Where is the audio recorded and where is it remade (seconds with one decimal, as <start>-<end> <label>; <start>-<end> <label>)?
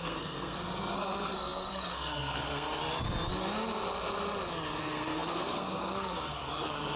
0.0-2.7 remade; 2.7-4.8 recorded; 4.8-7.0 remade